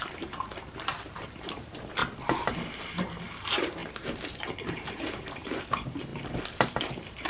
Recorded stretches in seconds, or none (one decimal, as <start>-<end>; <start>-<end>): 2.0-3.0